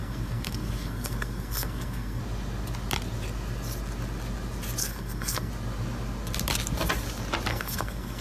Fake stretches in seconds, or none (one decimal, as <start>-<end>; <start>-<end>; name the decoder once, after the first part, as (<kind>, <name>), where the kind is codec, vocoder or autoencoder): 0.0-2.2 (codec, SNAC); 4.8-5.5; 7.5-8.2